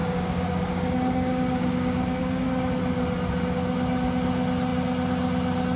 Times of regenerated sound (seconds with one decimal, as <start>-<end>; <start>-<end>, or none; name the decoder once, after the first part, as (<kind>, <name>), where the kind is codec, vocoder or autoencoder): 0.0-2.5 (codec, DAC)